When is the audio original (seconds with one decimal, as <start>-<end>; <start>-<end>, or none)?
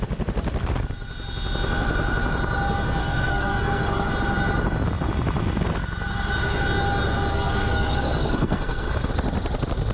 0.0-3.0; 4.1-7.3; 9.1-9.9